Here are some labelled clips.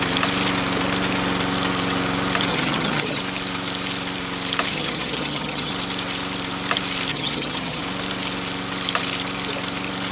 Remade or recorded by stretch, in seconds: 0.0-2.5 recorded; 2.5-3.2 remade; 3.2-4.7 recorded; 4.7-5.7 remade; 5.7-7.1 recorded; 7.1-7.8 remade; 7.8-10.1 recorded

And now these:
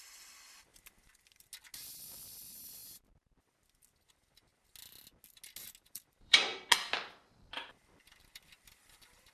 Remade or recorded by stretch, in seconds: 0.0-0.7 remade; 0.7-2.0 recorded; 2.0-2.8 remade; 2.8-4.1 recorded; 4.1-4.5 remade; 4.5-5.8 recorded; 5.8-6.5 remade; 6.5-7.4 recorded; 7.4-9.3 remade

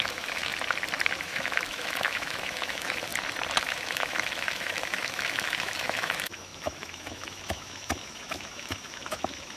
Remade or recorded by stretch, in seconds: 0.0-0.5 remade; 0.5-1.2 recorded; 1.2-3.1 remade; 3.1-3.6 recorded; 3.6-9.6 remade

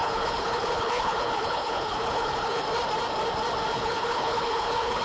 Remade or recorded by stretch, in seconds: 0.0-2.6 remade; 2.6-3.7 recorded; 3.7-5.0 remade